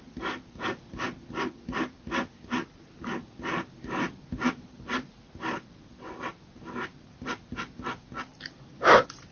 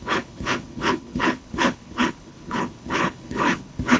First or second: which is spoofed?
second